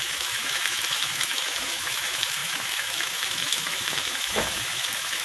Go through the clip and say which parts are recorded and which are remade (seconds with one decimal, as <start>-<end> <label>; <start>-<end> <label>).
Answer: 0.0-5.2 remade